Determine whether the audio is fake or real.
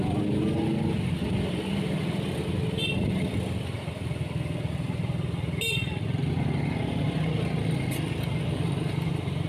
real